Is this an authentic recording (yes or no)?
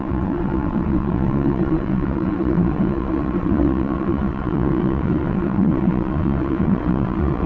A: no